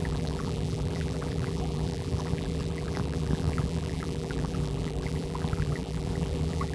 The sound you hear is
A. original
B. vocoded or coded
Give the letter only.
B